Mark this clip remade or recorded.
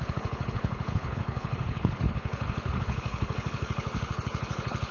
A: remade